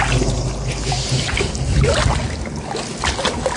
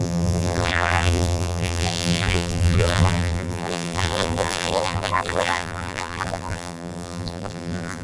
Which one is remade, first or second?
second